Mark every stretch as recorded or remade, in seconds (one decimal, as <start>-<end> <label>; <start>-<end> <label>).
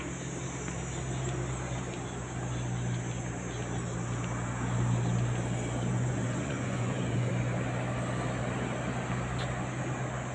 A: 0.0-5.9 recorded; 5.9-7.3 remade; 7.3-10.3 recorded